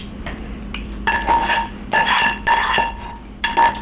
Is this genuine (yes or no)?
no